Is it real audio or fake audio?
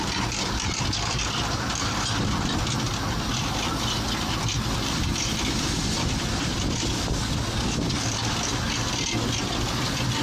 real